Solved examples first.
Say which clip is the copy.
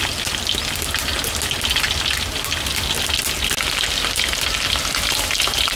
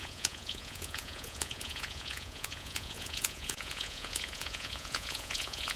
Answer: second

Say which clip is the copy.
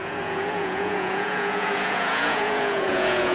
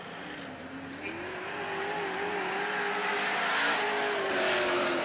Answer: first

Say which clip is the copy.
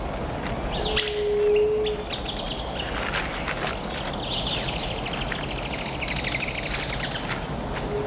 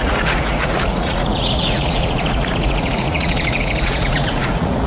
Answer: second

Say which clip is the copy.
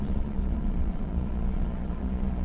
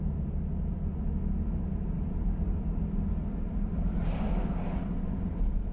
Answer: first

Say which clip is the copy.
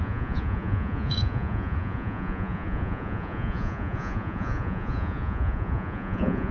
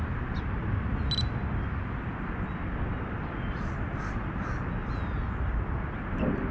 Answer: first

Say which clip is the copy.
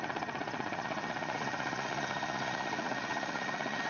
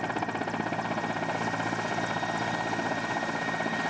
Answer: first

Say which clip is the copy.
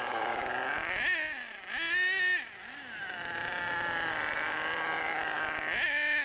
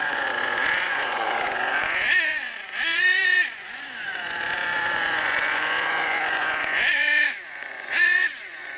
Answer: second